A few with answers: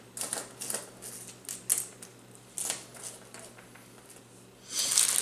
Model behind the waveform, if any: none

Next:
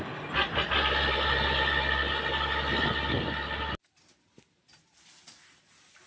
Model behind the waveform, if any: none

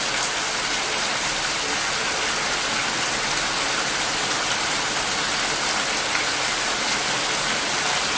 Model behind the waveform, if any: none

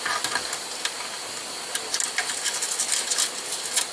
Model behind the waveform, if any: none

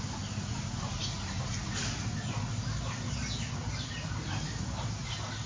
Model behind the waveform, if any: none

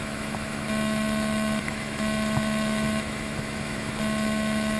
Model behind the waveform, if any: autoencoder, DAC-VAE